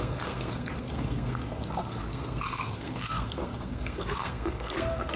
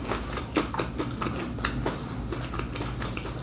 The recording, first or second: second